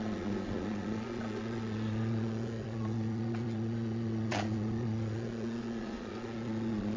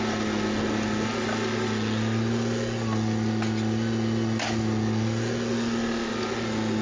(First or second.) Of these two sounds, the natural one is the second